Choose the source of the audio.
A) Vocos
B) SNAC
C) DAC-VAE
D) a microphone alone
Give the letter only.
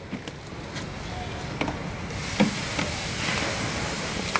D